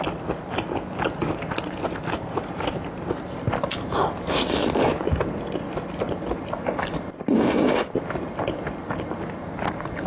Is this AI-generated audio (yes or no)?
no